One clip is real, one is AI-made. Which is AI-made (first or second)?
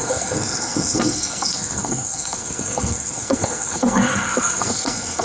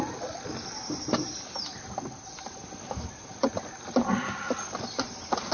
first